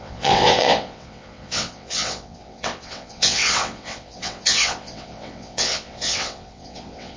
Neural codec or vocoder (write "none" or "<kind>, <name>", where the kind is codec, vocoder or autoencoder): vocoder, WaveNeXt